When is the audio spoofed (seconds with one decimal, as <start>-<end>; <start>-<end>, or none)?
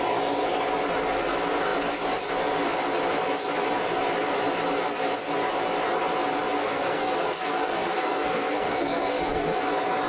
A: 6.6-9.6